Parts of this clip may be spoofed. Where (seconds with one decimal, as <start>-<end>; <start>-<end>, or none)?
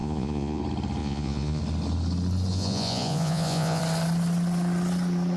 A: 0.0-0.6; 1.0-1.6; 2.5-3.8